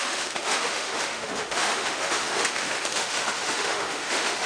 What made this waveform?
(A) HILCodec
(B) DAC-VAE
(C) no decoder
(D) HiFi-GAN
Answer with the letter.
B